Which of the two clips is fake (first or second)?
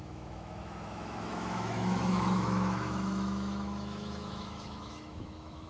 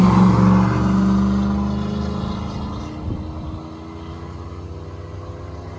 first